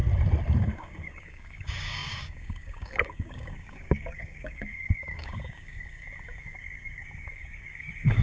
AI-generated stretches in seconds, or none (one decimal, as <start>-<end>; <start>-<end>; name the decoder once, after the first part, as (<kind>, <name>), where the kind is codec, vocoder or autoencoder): 0.6-8.2 (codec, DAC)